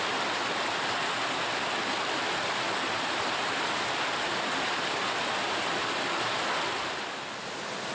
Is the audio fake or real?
real